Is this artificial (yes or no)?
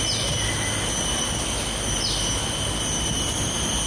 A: no